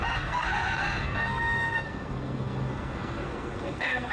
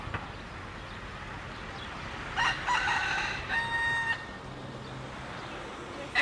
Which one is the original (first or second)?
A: second